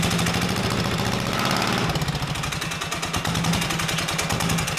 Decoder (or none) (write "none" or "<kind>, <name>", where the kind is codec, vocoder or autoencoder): none